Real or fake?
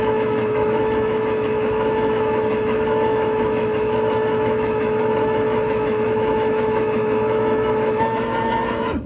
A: fake